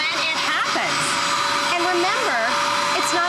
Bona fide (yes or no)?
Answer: yes